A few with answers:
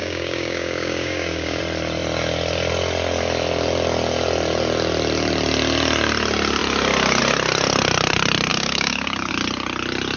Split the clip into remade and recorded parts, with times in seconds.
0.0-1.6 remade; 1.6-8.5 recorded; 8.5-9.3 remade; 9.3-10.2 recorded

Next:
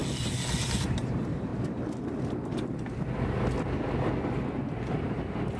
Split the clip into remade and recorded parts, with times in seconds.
0.0-0.6 recorded; 0.6-1.5 remade; 1.5-4.9 recorded; 4.9-5.6 remade

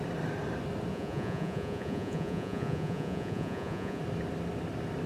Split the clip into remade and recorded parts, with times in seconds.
0.0-0.9 recorded; 0.9-4.0 remade; 4.0-5.1 recorded

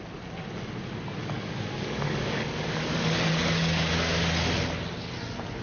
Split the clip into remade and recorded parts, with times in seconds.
0.0-1.2 recorded; 1.2-4.2 remade; 4.2-5.6 recorded

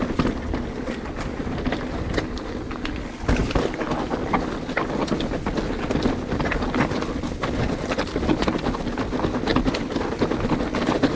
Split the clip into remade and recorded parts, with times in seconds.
0.0-9.5 recorded; 9.5-10.1 remade; 10.1-11.2 recorded

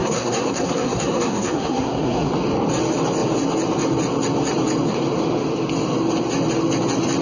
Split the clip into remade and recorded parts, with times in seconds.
0.0-2.3 remade; 2.3-7.2 recorded

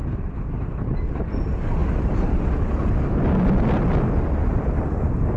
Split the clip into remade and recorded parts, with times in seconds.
0.0-5.4 recorded

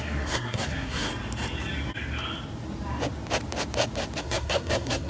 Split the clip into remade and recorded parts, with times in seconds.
0.0-1.1 remade; 1.1-4.2 recorded; 4.2-5.1 remade